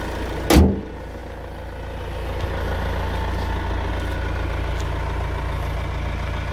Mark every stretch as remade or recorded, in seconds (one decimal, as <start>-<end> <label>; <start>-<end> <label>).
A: 0.0-6.5 recorded